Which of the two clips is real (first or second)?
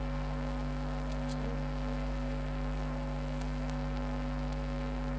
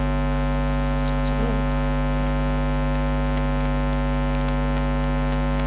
second